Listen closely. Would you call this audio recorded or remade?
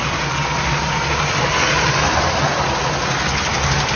recorded